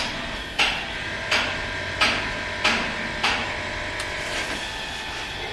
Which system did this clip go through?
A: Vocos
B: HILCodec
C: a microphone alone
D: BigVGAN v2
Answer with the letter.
C